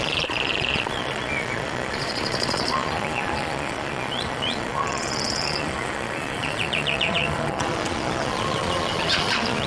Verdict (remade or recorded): remade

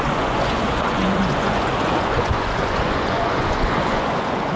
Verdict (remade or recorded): remade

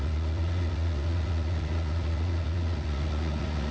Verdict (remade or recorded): remade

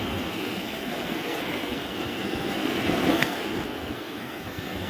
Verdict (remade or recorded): remade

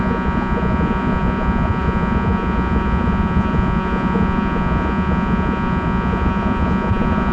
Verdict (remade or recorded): remade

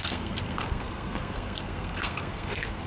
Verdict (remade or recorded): remade